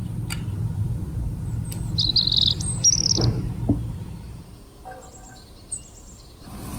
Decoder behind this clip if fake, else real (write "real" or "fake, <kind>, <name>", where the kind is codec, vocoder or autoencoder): real